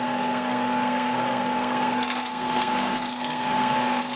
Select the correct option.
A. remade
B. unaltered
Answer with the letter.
A